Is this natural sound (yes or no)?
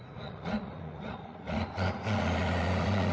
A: no